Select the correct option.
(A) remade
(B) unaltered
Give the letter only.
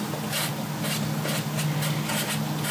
B